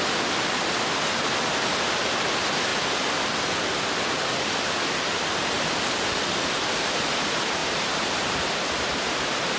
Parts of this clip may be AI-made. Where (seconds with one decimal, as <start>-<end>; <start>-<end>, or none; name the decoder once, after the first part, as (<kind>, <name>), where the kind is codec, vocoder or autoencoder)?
7.6-8.7 (vocoder, BigVGAN v2)